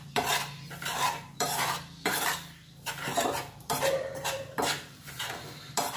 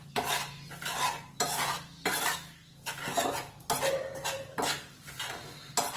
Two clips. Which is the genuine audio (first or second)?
second